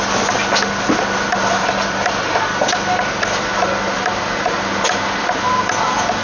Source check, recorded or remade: recorded